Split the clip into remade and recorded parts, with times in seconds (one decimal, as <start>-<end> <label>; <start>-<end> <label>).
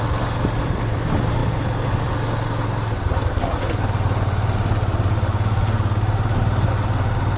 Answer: 0.0-7.4 recorded